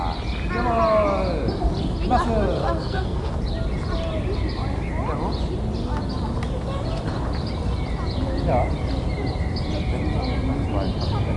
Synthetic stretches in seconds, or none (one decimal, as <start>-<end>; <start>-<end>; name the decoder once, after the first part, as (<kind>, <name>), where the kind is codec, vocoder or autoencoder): 2.6-3.3 (codec, SNAC)